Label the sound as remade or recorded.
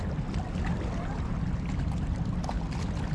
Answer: recorded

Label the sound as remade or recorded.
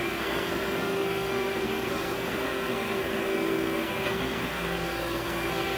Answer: remade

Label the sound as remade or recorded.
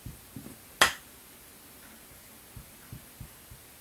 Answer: recorded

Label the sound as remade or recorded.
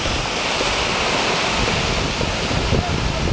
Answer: recorded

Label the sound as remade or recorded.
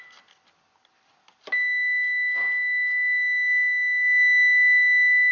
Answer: recorded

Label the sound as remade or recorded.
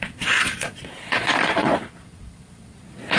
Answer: remade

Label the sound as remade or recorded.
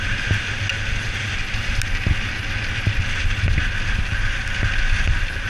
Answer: recorded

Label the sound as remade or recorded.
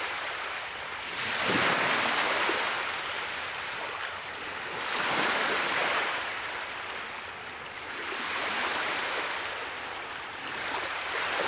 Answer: recorded